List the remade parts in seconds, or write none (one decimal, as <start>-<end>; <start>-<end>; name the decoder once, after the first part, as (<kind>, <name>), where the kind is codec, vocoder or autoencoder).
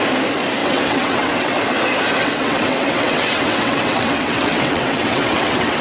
0.6-1.5 (vocoder, WaveNeXt); 2.2-5.8